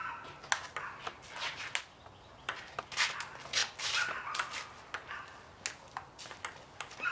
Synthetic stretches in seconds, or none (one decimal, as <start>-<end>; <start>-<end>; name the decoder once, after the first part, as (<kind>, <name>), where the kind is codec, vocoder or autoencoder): none